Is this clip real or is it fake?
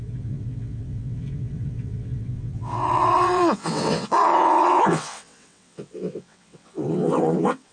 fake